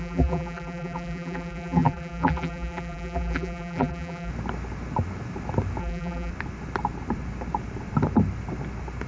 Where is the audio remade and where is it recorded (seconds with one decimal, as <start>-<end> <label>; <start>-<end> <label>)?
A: 0.0-4.3 remade; 4.3-5.8 recorded; 5.8-6.3 remade; 6.3-9.1 recorded